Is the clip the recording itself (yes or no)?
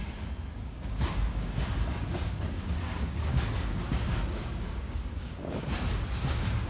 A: no